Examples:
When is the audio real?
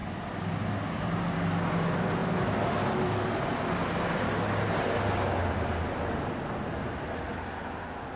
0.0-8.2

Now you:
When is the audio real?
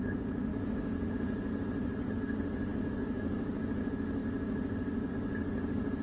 0.0-0.5; 1.1-2.7; 3.6-6.0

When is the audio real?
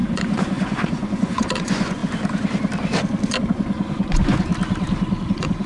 2.0-3.5; 4.5-5.3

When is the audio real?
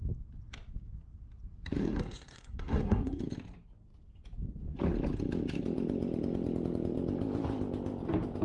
0.0-1.8; 3.2-8.4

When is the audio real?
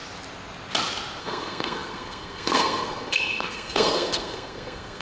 0.0-1.2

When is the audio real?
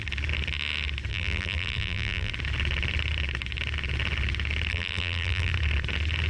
0.0-1.1; 2.3-4.7; 5.5-6.3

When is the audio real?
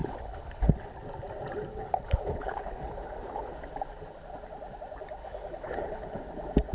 0.7-1.7; 3.5-5.2; 6.1-6.7